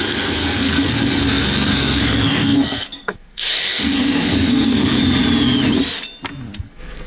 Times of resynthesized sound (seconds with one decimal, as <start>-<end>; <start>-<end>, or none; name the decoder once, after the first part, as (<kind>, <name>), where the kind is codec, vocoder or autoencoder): 0.0-5.0 (codec, SNAC); 6.6-7.1